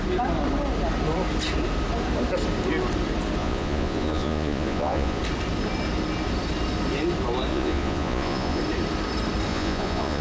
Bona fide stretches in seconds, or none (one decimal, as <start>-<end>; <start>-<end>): 0.0-3.4; 5.2-7.5; 8.6-9.5